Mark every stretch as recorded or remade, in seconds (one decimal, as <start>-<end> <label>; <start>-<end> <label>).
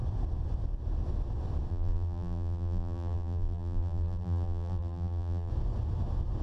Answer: 0.0-1.7 recorded; 1.7-5.5 remade; 5.5-6.4 recorded